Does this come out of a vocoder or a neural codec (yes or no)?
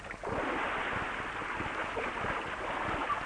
no